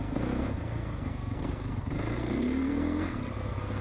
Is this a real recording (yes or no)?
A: no